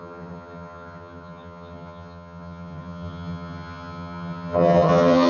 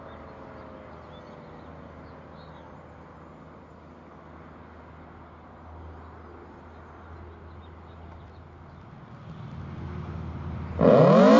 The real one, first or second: second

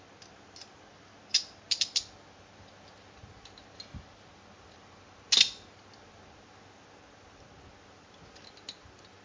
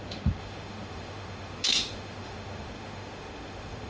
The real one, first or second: first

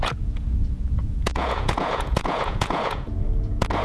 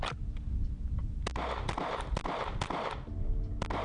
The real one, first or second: second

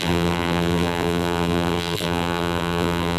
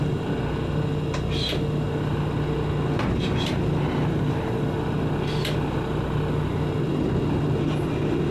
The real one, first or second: second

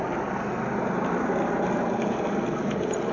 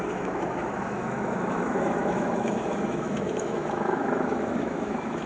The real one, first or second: first